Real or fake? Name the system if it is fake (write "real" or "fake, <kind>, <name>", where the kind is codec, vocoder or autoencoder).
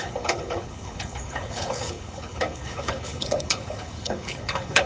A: fake, codec, HILCodec